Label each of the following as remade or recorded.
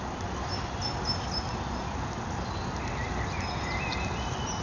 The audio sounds recorded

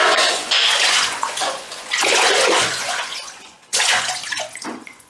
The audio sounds remade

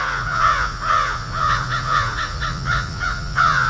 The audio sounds remade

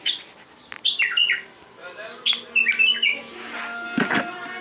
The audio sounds recorded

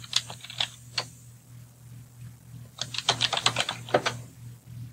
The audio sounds recorded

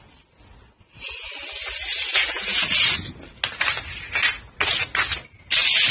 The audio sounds recorded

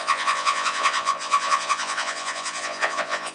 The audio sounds remade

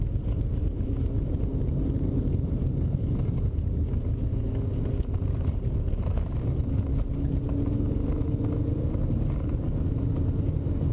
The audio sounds recorded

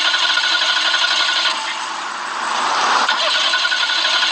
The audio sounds recorded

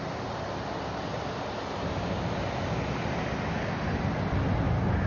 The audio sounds recorded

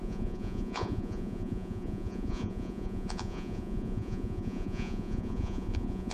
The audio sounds remade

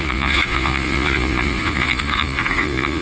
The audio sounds remade